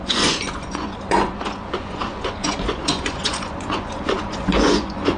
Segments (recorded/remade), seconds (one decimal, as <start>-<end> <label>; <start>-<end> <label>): 0.0-5.2 remade